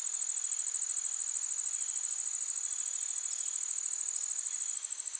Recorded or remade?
recorded